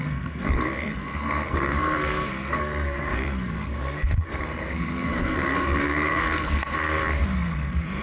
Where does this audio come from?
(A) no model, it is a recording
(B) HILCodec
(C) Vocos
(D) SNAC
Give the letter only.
D